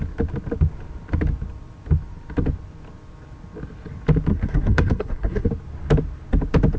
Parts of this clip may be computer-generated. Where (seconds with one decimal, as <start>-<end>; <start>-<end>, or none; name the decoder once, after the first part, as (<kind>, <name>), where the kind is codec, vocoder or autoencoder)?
4.3-5.5 (codec, SNAC)